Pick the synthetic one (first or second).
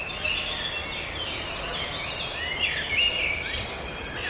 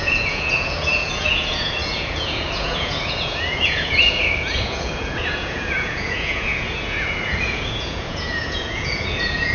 second